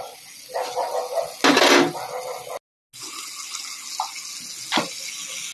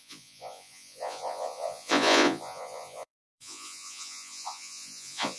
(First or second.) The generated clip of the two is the second